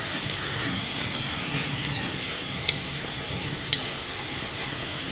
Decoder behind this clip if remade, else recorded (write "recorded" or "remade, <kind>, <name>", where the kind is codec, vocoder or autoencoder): remade, codec, SNAC